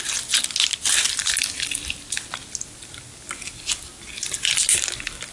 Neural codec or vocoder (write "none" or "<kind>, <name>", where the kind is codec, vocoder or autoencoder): none